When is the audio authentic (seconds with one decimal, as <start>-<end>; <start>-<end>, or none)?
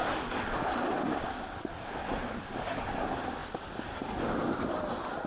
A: 0.0-5.3